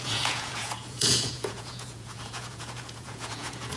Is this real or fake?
fake